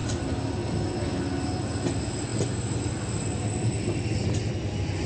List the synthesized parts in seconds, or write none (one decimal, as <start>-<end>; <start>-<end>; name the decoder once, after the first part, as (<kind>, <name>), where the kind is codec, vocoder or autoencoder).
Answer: none